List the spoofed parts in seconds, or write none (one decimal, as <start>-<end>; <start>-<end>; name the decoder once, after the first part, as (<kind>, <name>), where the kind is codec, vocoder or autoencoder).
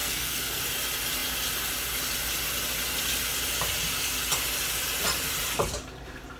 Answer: 0.0-0.6 (codec, SNAC)